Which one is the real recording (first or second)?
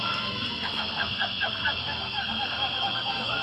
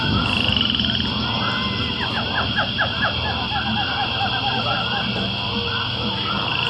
second